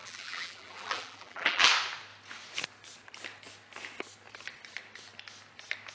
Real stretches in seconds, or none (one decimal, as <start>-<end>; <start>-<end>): 1.7-5.9